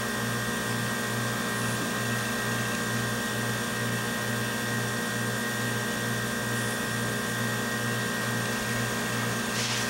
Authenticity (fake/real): real